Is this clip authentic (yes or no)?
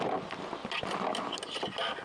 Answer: yes